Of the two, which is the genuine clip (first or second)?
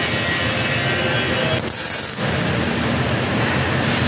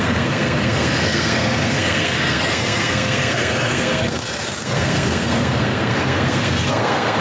first